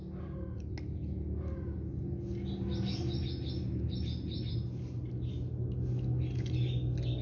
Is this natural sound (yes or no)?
yes